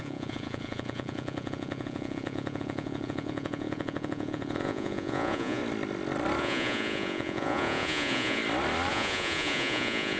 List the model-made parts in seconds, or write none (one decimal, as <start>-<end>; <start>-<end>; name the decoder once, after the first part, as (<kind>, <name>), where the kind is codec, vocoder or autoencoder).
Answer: 0.0-5.6 (vocoder, Vocos); 6.4-8.4; 8.9-10.2